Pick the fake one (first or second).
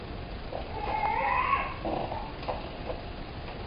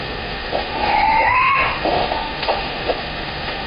second